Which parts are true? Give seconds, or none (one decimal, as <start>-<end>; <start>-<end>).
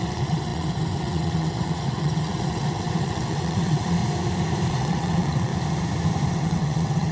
4.0-4.7; 5.5-6.3